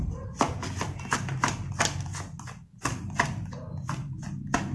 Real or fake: real